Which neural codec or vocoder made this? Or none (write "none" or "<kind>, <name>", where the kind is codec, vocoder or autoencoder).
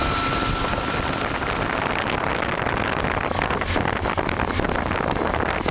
none